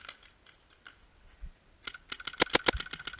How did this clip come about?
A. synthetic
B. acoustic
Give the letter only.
B